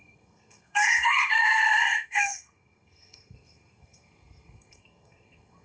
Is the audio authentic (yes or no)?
no